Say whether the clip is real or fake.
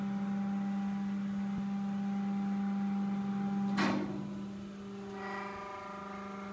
real